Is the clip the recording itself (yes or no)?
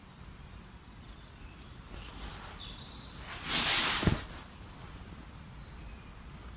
yes